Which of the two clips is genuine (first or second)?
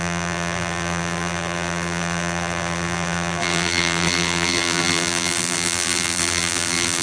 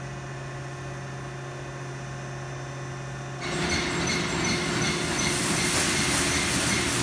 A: second